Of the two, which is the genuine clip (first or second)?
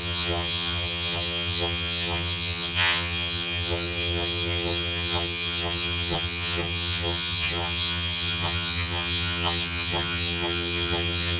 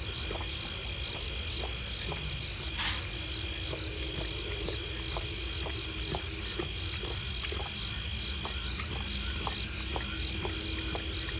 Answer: second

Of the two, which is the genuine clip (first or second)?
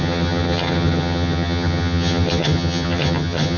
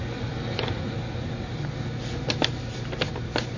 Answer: second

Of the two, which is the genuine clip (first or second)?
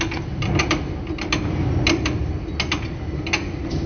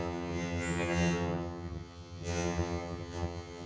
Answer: first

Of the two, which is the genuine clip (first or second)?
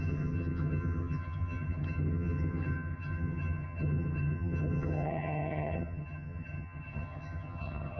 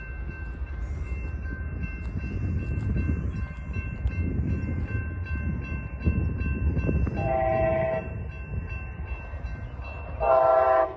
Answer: second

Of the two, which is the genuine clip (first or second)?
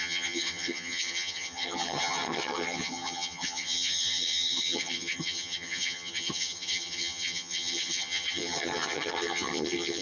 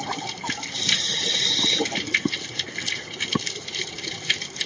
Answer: second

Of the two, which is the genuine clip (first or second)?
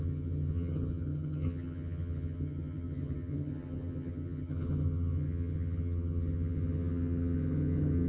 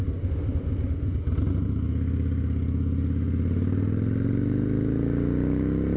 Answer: second